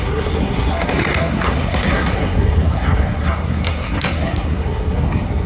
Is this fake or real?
fake